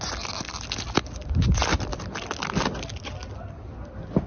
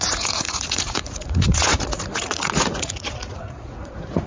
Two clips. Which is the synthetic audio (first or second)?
second